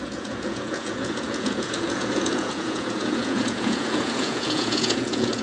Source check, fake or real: fake